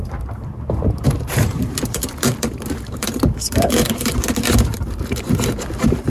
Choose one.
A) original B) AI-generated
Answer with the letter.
B